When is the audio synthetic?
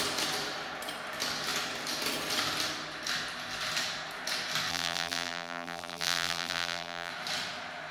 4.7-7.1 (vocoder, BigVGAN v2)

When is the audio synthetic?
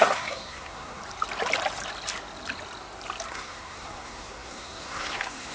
0.0-1.0 (codec, SNAC); 3.3-5.5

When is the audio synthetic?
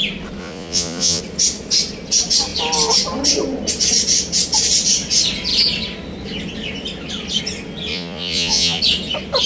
0.4-1.2 (vocoder, Vocos); 7.9-8.8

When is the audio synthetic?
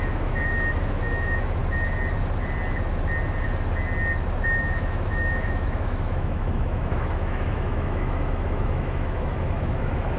0.0-1.6 (autoencoder, DAC-VAE); 4.6-10.2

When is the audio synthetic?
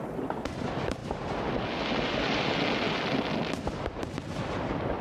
0.0-1.0 (vocoder, BigVGAN v2); 4.0-5.0